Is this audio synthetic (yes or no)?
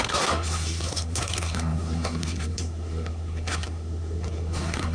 yes